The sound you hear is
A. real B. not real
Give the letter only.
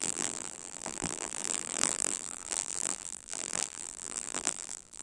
B